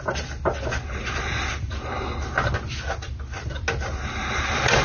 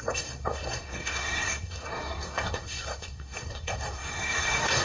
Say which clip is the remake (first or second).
second